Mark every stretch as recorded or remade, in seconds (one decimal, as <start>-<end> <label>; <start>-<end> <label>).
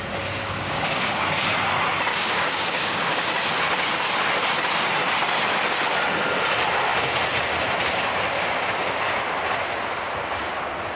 0.0-0.4 recorded; 0.4-1.2 remade; 1.2-2.1 recorded; 2.1-3.3 remade; 3.3-11.0 recorded